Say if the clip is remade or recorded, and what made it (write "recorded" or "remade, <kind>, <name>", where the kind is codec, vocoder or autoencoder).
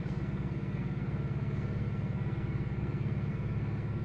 remade, codec, SNAC